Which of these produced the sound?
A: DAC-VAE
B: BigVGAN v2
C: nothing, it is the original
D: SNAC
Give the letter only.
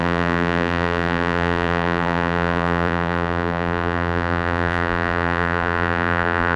B